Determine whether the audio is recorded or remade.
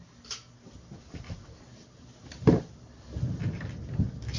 recorded